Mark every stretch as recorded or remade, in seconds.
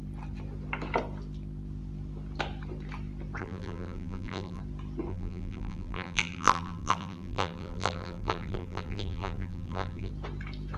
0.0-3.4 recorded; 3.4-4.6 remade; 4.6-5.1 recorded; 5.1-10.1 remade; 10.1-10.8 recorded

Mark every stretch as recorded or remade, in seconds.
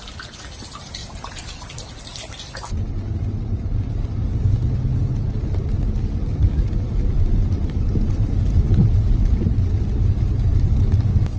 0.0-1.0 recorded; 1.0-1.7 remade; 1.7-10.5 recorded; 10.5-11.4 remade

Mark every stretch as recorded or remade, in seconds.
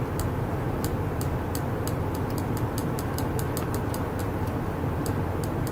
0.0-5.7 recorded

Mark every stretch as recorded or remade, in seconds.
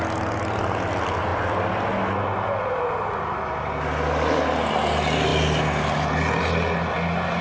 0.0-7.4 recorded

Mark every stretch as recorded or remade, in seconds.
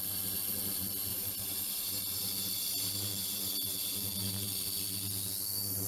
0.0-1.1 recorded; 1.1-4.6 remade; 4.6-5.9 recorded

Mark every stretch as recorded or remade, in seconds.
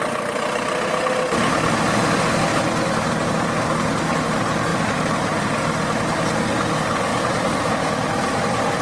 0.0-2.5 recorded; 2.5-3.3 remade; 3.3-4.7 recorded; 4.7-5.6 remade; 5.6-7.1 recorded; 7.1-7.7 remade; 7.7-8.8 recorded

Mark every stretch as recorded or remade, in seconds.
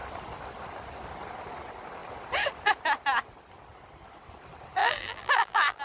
0.0-4.8 recorded; 4.8-5.8 remade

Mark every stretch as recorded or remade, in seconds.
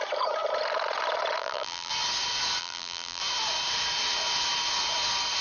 0.0-1.4 recorded; 1.4-1.9 remade; 1.9-2.6 recorded; 2.6-3.2 remade; 3.2-5.4 recorded